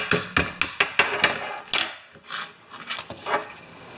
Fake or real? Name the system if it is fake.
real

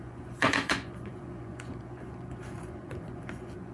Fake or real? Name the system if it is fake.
fake, vocoder, Vocos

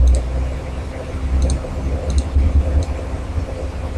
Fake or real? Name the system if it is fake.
real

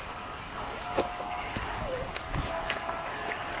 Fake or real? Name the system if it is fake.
fake, codec, DAC